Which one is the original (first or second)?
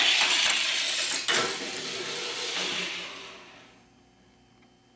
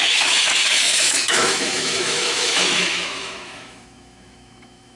first